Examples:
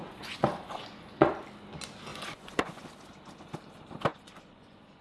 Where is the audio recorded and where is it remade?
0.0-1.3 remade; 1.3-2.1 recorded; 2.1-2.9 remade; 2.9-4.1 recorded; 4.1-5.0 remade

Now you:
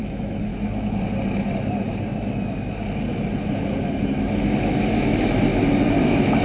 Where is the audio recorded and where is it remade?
0.0-0.5 remade; 0.5-4.3 recorded; 4.3-5.5 remade; 5.5-6.0 recorded; 6.0-6.4 remade

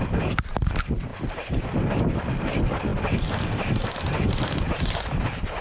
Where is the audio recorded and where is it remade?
0.0-5.6 recorded

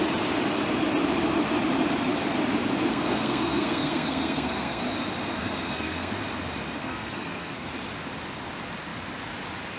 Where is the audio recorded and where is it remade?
0.0-2.9 recorded; 2.9-4.8 remade; 4.8-5.4 recorded; 5.4-6.1 remade; 6.1-6.8 recorded; 6.8-7.7 remade; 7.7-9.8 recorded